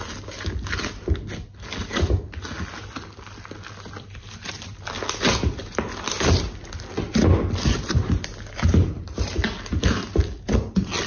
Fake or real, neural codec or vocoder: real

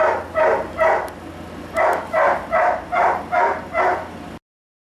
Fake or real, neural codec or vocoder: real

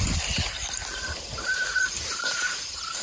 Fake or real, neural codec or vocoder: real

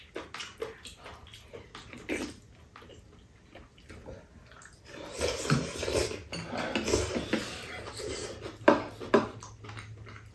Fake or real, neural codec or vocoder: real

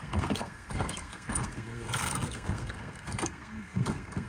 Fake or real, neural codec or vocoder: fake, codec, SNAC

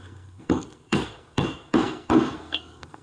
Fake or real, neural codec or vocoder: fake, codec, SNAC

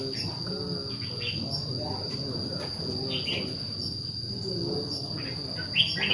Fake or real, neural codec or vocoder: real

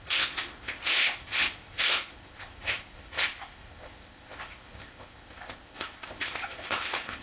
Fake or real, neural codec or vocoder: fake, codec, ZipCodec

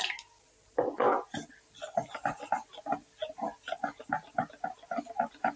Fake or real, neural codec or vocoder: real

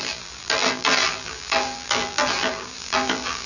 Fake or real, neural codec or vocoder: fake, vocoder, BigVGAN v2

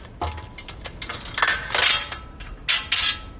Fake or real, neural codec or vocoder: real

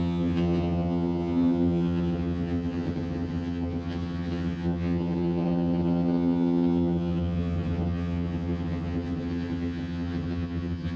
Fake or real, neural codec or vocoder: fake, vocoder, HiFi-GAN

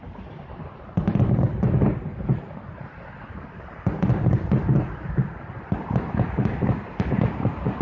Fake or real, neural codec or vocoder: fake, vocoder, BigVGAN v2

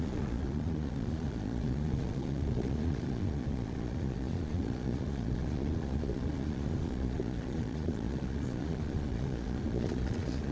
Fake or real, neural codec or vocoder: fake, vocoder, Vocos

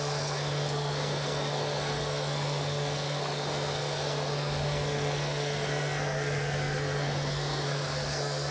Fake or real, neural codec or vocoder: fake, codec, SNAC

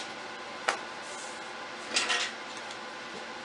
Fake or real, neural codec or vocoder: real